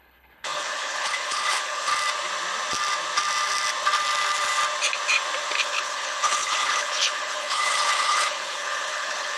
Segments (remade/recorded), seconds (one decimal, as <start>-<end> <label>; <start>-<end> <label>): 0.0-1.9 remade; 1.9-5.6 recorded; 5.6-9.4 remade